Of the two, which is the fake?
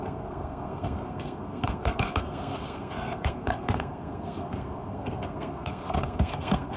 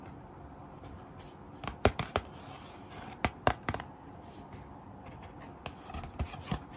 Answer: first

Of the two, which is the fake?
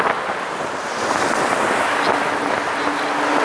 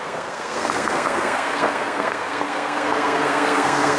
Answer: second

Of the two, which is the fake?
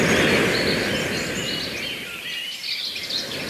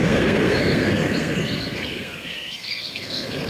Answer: second